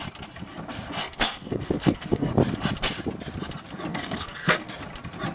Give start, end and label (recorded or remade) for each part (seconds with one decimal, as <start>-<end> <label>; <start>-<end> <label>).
0.0-1.0 recorded; 1.0-2.3 remade; 2.3-3.9 recorded; 3.9-4.7 remade; 4.7-5.3 recorded